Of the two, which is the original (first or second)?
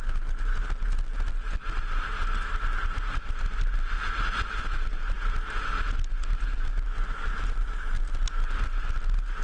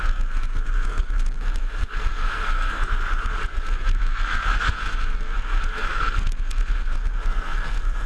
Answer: first